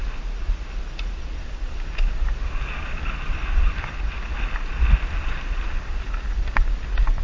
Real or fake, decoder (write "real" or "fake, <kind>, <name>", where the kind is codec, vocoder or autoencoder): real